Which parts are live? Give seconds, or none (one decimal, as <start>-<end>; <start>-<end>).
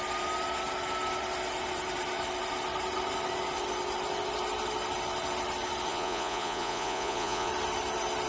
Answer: 0.0-5.9; 7.5-8.3